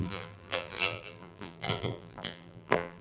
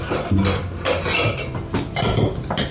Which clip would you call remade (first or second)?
first